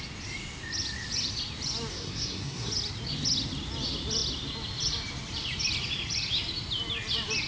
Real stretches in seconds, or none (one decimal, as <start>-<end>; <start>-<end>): 0.0-1.9; 2.7-7.5